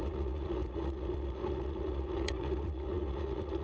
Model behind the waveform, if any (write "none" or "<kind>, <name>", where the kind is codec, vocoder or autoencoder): vocoder, Vocos